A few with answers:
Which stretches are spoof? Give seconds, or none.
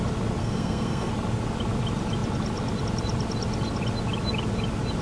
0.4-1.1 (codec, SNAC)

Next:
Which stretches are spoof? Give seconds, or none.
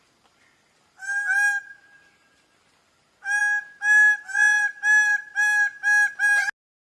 none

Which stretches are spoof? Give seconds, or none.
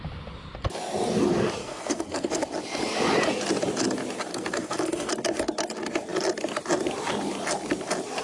1.6-2.3 (codec, SNAC); 4.3-5.1